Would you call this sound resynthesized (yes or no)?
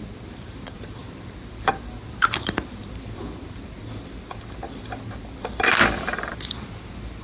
yes